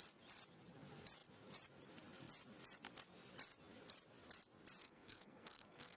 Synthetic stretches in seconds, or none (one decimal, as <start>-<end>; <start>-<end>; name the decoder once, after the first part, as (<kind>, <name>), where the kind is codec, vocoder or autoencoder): 4.8-6.0 (codec, SNAC)